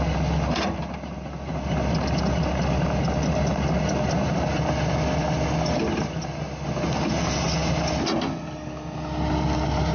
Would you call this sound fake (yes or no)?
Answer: no